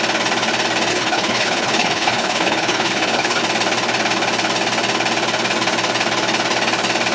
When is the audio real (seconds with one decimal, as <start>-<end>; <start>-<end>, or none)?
0.0-0.9; 3.4-7.1